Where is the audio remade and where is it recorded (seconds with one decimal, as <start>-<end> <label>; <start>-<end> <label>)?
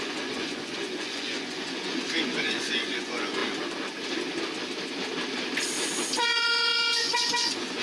0.0-3.4 remade; 3.4-6.2 recorded; 6.2-7.8 remade